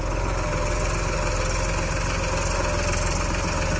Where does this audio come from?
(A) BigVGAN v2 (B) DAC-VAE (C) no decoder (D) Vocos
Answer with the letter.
C